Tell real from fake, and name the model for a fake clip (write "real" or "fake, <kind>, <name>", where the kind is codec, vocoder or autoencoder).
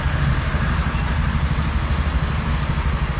real